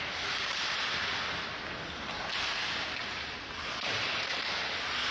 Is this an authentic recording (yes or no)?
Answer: yes